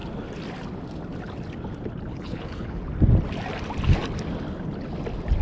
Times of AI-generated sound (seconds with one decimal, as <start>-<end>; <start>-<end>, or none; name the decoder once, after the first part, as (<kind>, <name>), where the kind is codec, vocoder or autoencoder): 2.1-2.8 (codec, HILCodec)